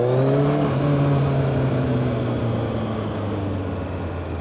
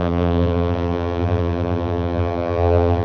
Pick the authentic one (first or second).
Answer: first